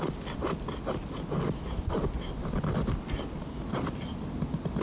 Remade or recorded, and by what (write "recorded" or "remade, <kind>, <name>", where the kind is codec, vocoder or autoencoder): recorded